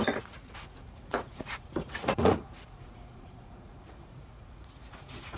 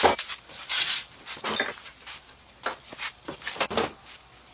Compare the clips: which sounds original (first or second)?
second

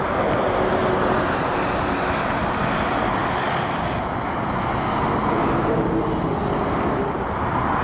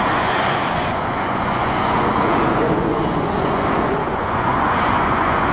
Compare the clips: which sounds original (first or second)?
first